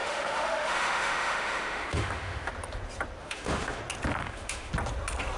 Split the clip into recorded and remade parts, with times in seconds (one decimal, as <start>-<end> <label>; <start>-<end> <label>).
0.0-2.5 remade; 2.5-3.2 recorded; 3.2-3.8 remade; 3.8-4.2 recorded; 4.2-4.7 remade; 4.7-5.4 recorded